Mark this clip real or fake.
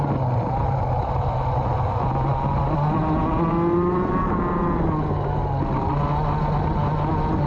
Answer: real